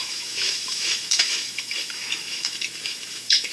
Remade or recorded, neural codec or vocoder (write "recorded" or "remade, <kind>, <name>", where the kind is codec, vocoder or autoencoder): remade, autoencoder, DAC-VAE